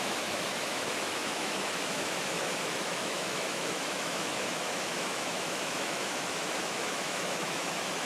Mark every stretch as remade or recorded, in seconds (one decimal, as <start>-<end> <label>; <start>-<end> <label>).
0.0-8.1 remade